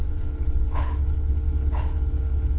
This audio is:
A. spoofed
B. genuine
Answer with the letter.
A